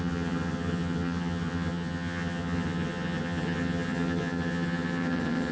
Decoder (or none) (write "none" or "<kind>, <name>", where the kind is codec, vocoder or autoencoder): vocoder, HiFi-GAN